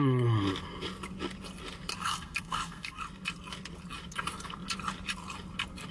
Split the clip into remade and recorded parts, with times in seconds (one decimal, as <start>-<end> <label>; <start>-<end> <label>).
0.0-2.0 recorded; 2.0-3.0 remade; 3.0-5.9 recorded